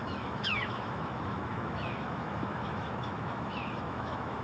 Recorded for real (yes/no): no